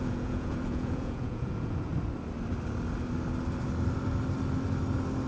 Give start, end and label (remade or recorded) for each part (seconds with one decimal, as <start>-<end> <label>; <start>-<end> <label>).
0.0-1.9 remade; 1.9-5.3 recorded